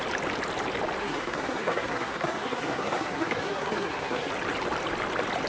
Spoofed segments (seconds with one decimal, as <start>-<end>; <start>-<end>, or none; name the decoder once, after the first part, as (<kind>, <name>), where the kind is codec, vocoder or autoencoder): 1.0-4.3 (codec, SNAC)